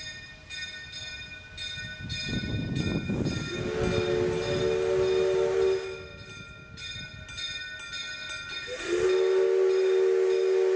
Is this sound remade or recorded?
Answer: recorded